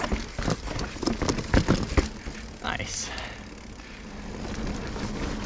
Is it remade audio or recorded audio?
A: recorded